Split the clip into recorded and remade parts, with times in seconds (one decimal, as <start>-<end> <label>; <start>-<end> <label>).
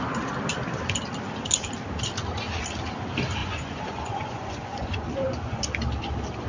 0.0-3.4 recorded; 3.4-5.6 remade; 5.6-6.5 recorded